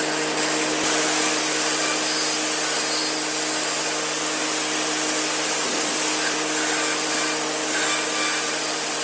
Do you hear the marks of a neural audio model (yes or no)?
no